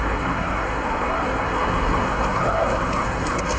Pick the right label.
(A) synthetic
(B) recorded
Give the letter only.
A